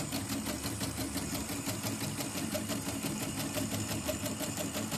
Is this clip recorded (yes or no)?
no